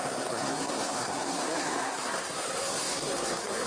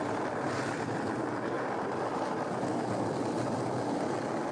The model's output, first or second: first